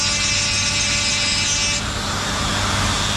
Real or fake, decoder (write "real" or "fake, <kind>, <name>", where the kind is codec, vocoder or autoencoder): real